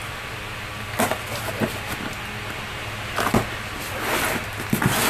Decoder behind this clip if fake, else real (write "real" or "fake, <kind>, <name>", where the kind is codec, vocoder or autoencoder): real